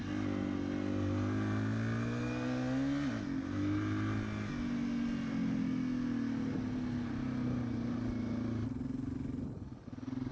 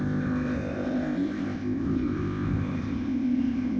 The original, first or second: first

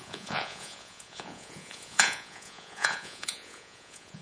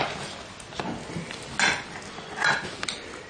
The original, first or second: second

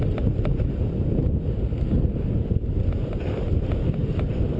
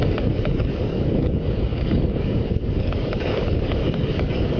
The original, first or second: first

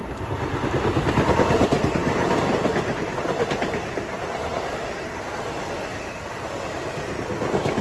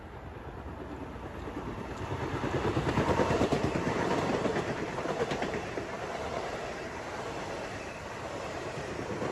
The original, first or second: first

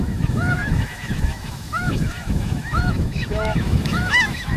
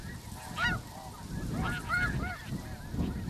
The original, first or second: second